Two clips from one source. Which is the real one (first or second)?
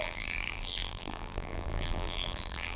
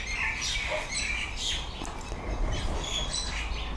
second